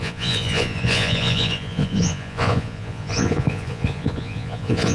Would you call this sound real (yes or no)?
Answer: no